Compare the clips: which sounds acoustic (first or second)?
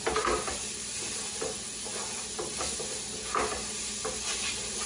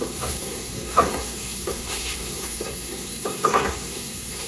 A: first